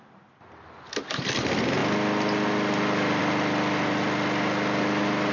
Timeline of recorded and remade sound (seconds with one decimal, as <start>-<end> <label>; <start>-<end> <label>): 0.0-5.3 recorded